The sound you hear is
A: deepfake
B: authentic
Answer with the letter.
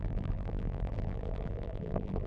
A